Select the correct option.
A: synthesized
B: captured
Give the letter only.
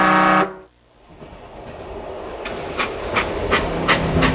B